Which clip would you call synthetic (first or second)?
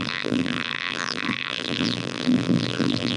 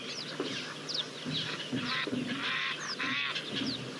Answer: first